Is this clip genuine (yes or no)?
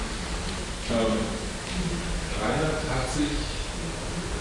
yes